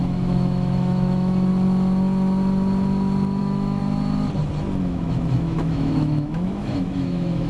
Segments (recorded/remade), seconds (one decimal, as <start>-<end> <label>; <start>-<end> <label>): 0.0-1.5 remade; 1.5-3.4 recorded; 3.4-3.8 remade; 3.8-4.8 recorded; 4.8-7.5 remade